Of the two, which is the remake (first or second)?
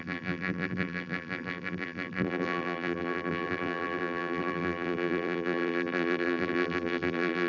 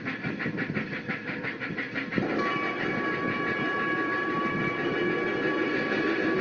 first